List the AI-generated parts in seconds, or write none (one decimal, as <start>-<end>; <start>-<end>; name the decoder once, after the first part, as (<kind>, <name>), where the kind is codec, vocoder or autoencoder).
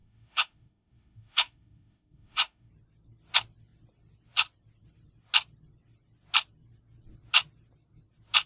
0.0-2.7 (autoencoder, DAC-VAE)